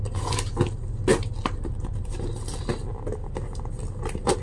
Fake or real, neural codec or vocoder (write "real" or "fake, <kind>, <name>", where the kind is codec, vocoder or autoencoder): real